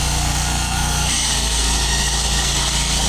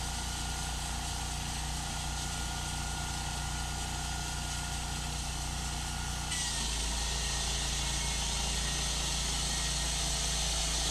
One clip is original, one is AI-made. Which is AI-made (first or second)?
first